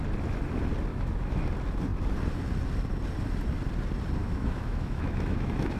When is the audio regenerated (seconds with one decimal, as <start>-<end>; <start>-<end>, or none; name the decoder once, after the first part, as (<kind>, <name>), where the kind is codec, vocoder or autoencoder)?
0.9-1.5 (autoencoder, DAC-VAE); 4.2-5.8